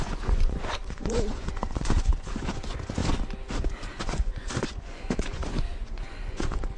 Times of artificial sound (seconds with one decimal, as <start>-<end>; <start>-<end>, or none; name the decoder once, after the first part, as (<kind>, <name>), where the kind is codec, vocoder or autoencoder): 0.0-3.0 (vocoder, Vocos); 4.0-6.8